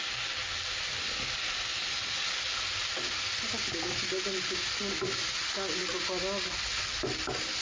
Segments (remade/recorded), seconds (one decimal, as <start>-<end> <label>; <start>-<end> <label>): 0.0-7.6 recorded